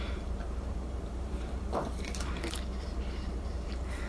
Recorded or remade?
remade